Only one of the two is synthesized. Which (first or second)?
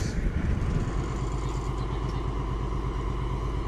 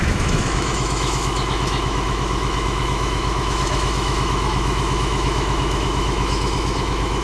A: second